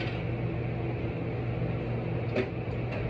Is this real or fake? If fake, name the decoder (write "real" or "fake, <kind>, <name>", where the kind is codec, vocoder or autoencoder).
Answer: real